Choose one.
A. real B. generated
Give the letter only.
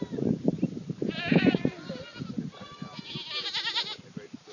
A